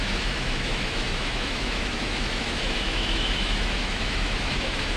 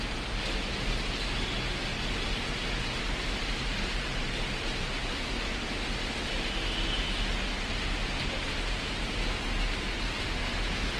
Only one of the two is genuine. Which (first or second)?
second